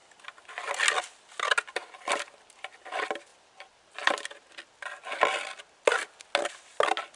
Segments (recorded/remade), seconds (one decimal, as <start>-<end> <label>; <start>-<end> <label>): 0.0-7.2 recorded